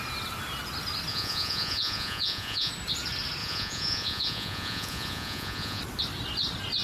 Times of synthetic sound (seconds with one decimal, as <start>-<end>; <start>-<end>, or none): 1.1-2.7; 3.4-5.8